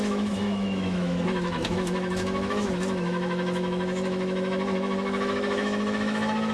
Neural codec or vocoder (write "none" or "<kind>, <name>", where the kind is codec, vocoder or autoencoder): autoencoder, DAC-VAE